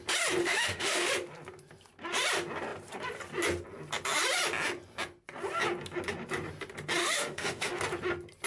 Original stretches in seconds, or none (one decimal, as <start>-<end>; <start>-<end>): 0.0-0.4; 1.1-7.0; 7.8-8.5